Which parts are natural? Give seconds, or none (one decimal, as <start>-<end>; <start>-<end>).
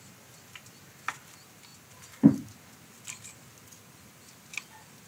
0.0-5.1